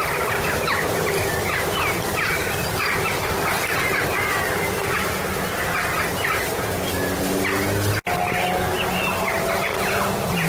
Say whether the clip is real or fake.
real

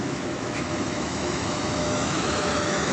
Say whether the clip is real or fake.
fake